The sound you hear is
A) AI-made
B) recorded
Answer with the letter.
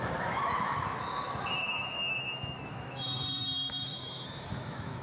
A